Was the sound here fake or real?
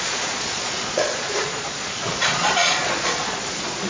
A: fake